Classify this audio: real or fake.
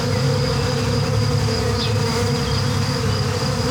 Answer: real